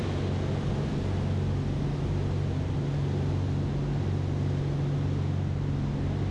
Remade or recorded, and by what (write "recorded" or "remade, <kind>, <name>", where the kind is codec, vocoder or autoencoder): recorded